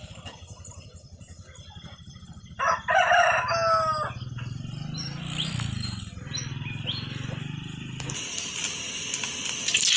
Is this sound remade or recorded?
recorded